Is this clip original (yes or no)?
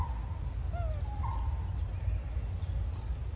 yes